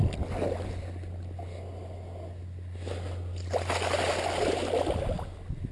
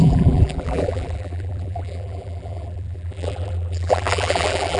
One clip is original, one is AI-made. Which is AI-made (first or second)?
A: second